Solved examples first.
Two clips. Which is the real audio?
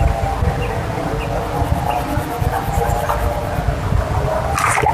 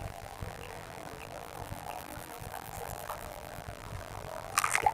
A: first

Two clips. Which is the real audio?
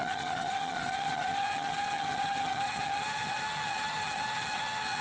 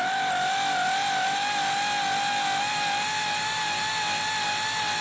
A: second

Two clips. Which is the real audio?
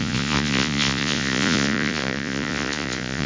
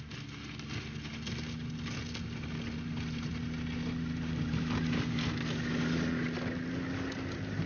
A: second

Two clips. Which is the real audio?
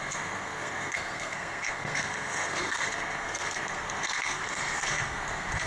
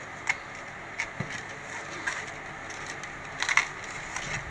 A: second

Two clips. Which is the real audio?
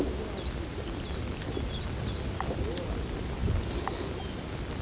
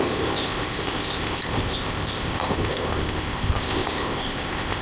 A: first